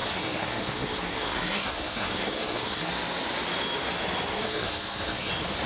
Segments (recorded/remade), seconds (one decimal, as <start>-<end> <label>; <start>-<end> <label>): 0.0-2.9 remade; 2.9-4.3 recorded; 4.3-5.3 remade; 5.3-5.7 recorded